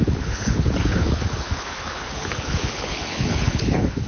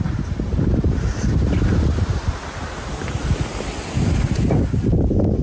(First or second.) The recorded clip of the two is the second